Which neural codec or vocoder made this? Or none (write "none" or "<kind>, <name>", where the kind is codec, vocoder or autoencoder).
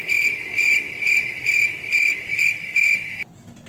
none